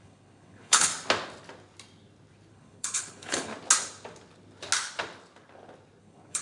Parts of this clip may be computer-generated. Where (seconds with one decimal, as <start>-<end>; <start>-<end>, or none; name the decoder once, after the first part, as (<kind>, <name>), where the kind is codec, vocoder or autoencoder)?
0.0-0.9 (codec, HILCodec); 2.5-3.5; 6.0-6.4